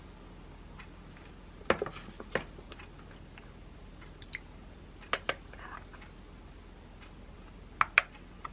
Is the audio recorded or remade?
recorded